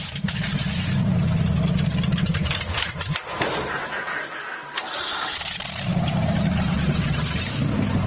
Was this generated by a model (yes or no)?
yes